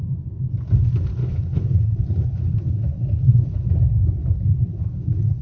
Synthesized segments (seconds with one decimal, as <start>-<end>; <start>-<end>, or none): 1.2-3.7; 4.2-5.4